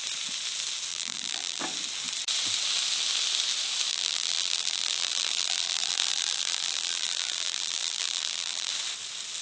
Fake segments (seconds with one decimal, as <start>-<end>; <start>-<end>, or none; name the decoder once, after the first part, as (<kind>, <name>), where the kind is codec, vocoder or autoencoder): 0.9-1.6 (vocoder, BigVGAN v2); 3.9-8.7